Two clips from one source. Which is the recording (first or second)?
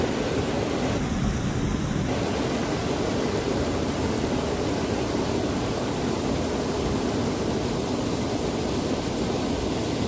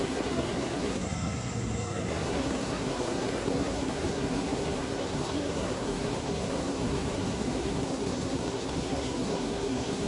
first